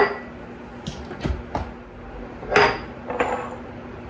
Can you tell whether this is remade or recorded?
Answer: recorded